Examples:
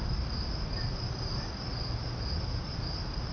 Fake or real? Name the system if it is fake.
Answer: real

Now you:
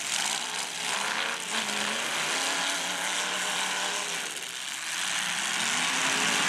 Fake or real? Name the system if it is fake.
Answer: real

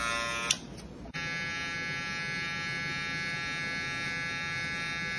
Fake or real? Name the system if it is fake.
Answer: real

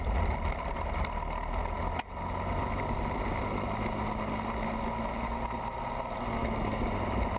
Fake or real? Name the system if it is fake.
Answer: real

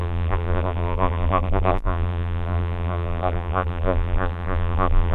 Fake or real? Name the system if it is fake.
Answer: fake, vocoder, BigVGAN v2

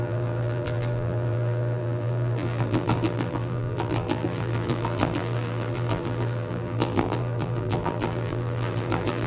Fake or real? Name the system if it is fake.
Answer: fake, vocoder, BigVGAN v2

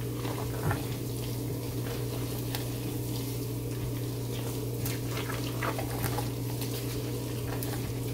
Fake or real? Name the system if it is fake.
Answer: real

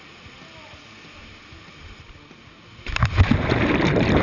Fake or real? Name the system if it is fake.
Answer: real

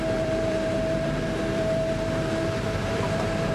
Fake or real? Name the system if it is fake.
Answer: fake, vocoder, BigVGAN v2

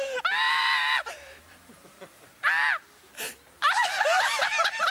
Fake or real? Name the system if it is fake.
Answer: fake, vocoder, BigVGAN v2